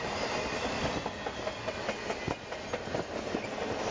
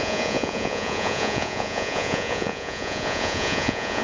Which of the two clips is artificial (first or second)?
second